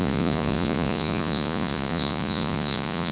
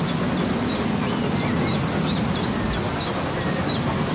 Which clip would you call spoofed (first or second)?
first